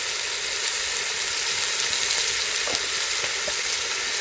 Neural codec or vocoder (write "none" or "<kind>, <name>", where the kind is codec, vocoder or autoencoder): none